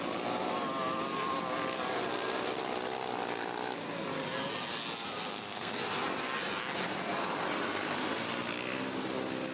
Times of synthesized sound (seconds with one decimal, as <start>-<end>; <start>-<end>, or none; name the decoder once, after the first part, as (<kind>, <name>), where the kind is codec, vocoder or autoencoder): 5.3-5.8 (codec, SNAC)